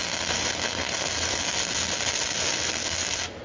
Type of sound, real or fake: real